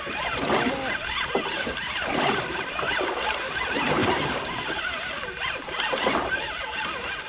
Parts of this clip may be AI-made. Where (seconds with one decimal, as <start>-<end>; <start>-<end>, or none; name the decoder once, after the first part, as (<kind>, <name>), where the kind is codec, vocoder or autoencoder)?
4.0-4.8 (vocoder, BigVGAN v2)